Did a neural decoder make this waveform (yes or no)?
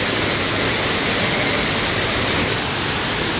no